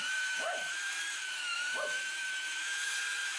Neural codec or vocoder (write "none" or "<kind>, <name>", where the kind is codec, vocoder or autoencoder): autoencoder, DAC-VAE